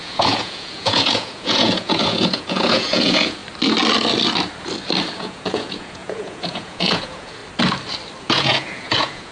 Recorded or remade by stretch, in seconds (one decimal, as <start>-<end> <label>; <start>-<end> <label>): 0.0-3.4 remade; 3.4-5.1 recorded; 5.1-7.4 remade; 7.4-8.2 recorded; 8.2-9.3 remade